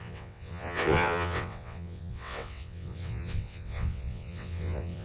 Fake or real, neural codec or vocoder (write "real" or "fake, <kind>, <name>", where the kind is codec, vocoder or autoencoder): fake, vocoder, WaveNeXt